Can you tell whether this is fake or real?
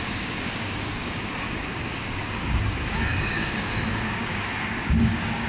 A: fake